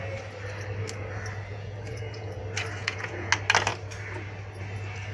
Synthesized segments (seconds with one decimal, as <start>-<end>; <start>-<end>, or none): 1.5-2.4; 2.8-3.3